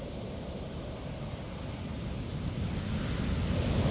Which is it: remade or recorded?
recorded